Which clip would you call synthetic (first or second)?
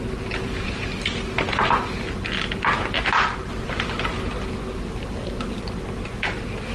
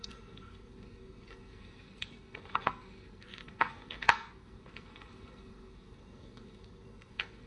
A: second